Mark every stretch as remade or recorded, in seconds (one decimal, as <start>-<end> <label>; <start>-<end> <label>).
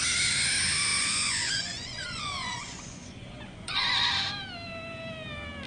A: 0.0-0.9 recorded; 0.9-4.1 remade; 4.1-5.7 recorded